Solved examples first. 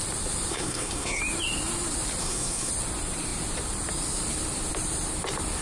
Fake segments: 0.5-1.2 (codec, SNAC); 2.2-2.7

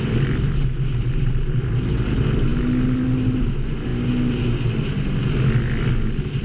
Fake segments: none